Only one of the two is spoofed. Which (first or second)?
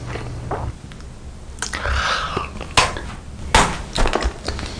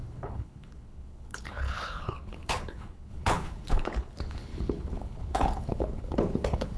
second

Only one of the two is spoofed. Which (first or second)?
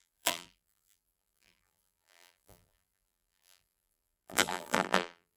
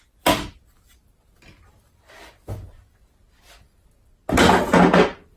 first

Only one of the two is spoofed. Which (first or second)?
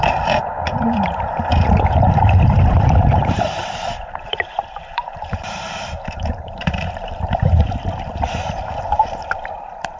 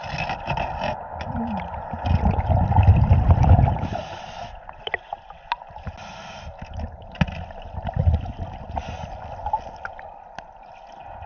first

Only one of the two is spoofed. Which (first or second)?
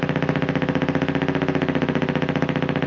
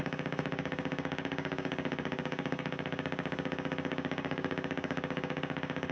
second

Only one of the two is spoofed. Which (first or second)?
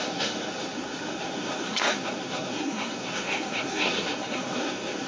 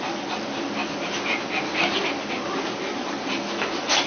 first